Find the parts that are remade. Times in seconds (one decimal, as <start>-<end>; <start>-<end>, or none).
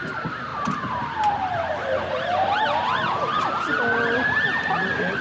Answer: 0.5-3.4